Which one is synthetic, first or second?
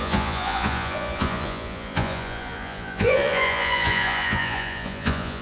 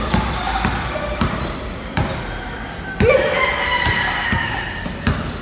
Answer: first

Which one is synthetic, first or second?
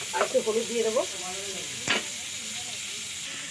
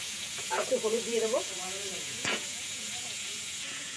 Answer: second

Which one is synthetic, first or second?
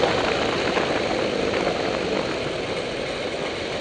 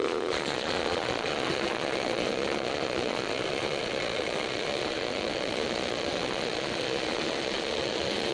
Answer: second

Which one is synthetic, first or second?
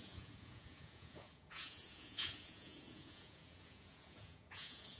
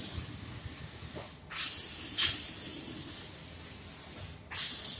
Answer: first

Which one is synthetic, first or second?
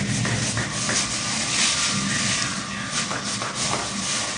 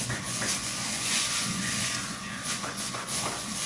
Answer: second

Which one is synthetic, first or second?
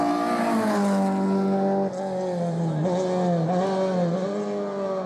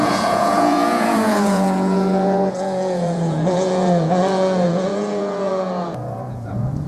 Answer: second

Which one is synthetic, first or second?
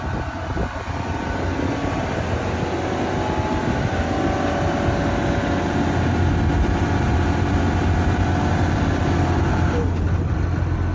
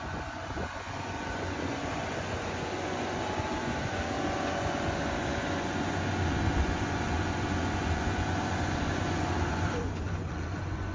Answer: second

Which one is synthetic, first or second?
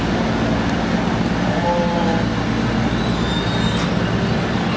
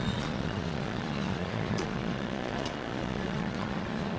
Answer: second